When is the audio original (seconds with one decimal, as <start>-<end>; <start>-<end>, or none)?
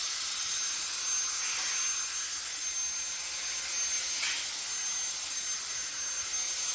0.0-6.7